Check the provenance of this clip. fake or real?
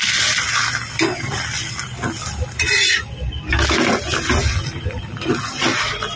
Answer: real